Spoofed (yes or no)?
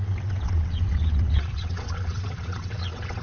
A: yes